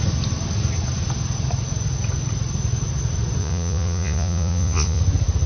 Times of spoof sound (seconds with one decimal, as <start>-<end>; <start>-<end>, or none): 3.4-5.0